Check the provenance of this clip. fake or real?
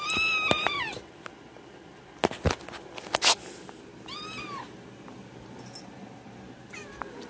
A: real